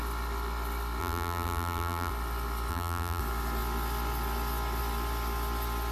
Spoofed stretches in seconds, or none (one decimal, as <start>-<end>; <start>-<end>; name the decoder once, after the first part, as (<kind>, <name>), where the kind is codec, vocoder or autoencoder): 1.0-2.1 (vocoder, BigVGAN v2); 2.7-3.2